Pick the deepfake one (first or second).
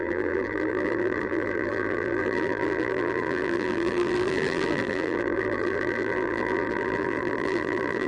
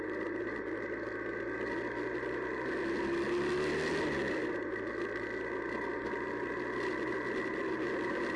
first